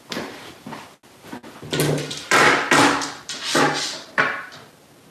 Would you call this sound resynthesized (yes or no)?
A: no